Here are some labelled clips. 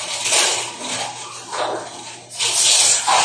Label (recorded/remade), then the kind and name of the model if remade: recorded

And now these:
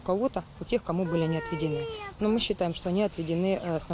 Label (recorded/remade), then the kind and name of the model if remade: recorded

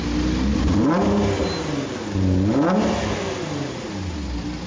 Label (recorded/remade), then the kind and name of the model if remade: recorded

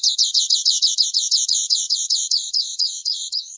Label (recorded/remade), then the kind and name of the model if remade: remade, vocoder, Vocos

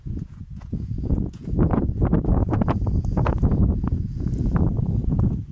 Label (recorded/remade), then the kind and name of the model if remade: remade, vocoder, Vocos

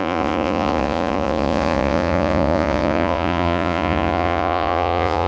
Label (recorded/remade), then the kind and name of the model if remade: remade, vocoder, Vocos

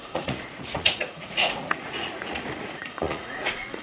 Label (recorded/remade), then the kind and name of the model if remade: remade, vocoder, Vocos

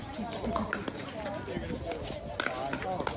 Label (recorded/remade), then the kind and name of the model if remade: recorded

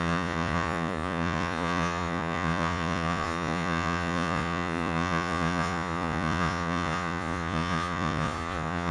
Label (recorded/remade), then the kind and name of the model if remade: remade, vocoder, Vocos